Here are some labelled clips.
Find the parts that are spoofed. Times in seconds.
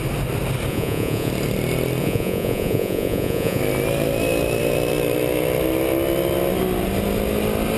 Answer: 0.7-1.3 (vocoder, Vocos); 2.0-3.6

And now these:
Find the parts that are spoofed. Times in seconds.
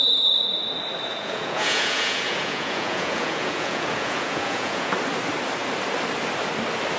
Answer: 1.1-4.9 (vocoder, Vocos)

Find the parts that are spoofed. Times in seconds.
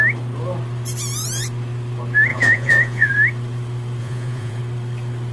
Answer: 2.3-3.1 (vocoder, Vocos); 4.0-4.6